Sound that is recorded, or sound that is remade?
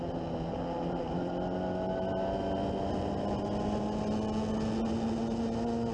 recorded